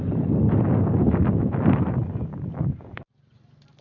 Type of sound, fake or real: real